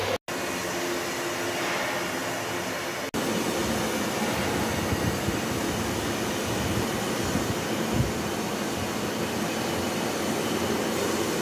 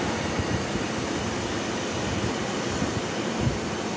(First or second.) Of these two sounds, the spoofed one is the second